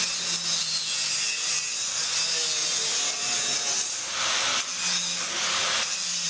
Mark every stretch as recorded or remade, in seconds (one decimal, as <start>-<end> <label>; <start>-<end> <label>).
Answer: 0.0-0.6 recorded; 0.6-2.0 remade; 2.0-2.6 recorded; 2.6-4.2 remade; 4.2-6.3 recorded